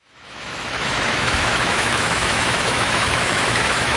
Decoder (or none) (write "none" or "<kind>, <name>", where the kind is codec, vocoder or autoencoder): autoencoder, DAC-VAE